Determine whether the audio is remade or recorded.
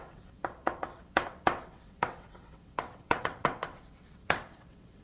remade